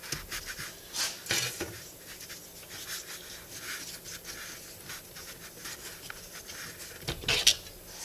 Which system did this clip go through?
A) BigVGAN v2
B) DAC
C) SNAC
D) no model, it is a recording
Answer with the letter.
D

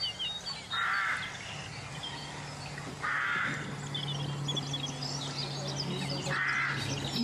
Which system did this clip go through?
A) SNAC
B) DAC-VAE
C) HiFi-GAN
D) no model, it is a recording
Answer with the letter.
D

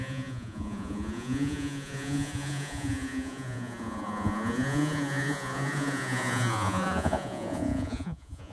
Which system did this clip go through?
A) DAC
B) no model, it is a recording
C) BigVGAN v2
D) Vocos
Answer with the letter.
D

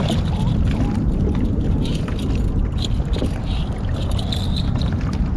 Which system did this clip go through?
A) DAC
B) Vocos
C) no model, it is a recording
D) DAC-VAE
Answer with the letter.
C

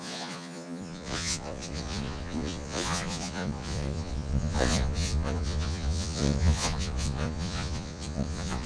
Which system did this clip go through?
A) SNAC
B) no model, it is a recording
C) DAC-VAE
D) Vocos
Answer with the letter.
D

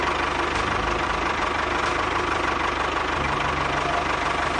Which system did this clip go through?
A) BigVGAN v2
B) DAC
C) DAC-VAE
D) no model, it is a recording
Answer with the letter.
D